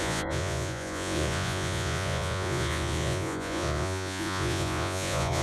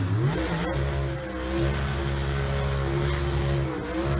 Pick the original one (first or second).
second